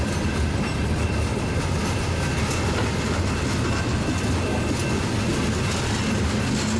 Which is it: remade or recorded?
recorded